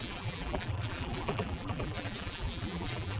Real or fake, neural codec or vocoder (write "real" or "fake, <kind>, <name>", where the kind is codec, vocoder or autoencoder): fake, vocoder, BigVGAN v2